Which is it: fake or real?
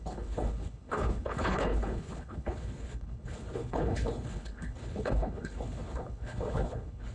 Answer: fake